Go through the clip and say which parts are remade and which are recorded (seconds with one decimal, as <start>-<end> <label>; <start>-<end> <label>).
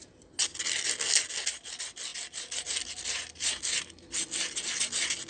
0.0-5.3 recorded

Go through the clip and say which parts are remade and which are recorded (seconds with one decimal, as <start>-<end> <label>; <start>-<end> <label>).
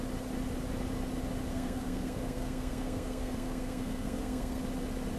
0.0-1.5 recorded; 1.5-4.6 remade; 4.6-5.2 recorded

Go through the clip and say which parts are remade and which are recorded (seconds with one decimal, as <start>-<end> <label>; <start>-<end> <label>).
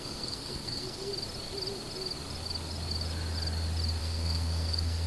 0.0-1.1 remade; 1.1-4.0 recorded; 4.0-5.1 remade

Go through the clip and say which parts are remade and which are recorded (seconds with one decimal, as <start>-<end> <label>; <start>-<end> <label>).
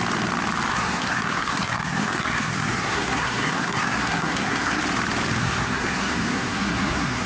0.0-0.7 recorded; 0.7-4.8 remade; 4.8-5.4 recorded; 5.4-7.3 remade